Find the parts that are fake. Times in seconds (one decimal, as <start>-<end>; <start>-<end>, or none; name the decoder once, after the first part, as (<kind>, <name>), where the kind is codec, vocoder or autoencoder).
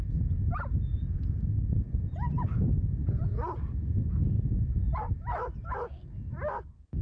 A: none